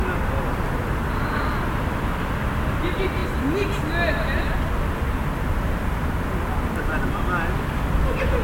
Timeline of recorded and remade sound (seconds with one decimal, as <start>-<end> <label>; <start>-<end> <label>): 0.0-0.6 remade; 0.6-8.4 recorded